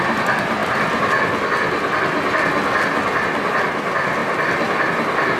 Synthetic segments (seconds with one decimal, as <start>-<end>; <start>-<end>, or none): none